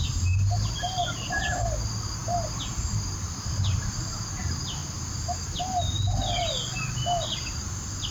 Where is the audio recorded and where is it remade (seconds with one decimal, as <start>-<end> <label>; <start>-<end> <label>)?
0.0-4.8 recorded; 4.8-5.6 remade; 5.6-8.1 recorded